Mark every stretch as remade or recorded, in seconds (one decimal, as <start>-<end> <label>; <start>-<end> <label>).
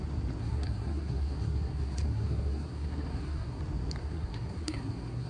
0.0-0.4 recorded; 0.4-3.6 remade; 3.6-4.0 recorded; 4.0-5.3 remade